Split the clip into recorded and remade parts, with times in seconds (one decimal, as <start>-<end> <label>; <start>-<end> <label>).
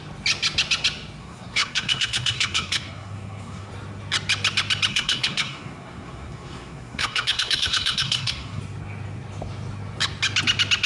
0.0-1.2 recorded; 1.2-3.7 remade; 3.7-4.9 recorded; 4.9-8.6 remade; 8.6-10.9 recorded